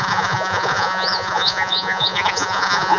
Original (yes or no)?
no